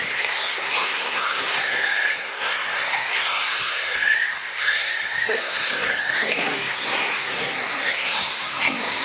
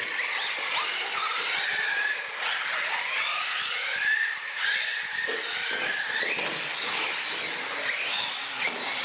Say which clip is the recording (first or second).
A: second